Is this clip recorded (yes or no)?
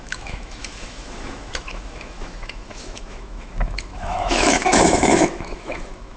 no